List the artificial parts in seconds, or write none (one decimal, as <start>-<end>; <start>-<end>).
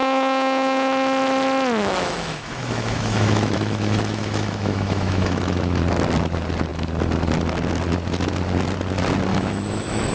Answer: 0.0-0.9; 1.8-5.8; 9.3-10.1